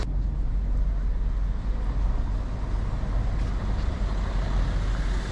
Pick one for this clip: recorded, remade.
recorded